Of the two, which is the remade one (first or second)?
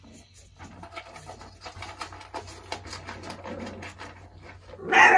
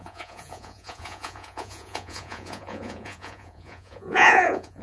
second